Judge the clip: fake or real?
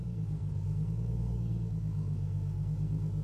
fake